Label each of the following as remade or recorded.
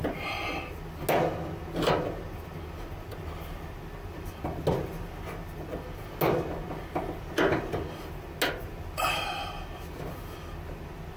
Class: recorded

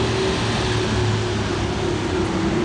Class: recorded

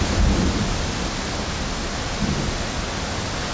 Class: recorded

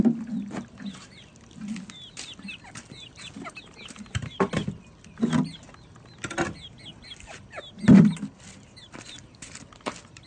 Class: recorded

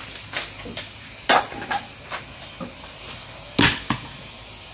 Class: recorded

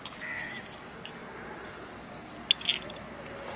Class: recorded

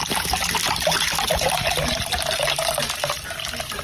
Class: recorded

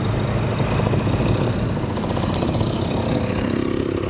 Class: recorded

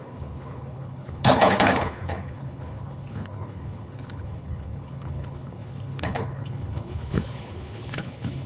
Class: remade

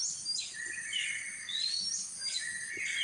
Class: recorded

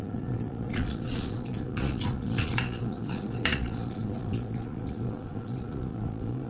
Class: remade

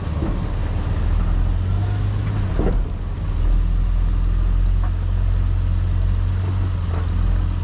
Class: recorded